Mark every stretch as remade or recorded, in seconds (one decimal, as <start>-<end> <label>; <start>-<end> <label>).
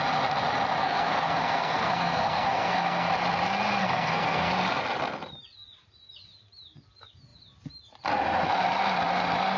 0.0-0.8 recorded; 0.8-3.1 remade; 3.1-3.8 recorded; 3.8-4.5 remade; 4.5-9.6 recorded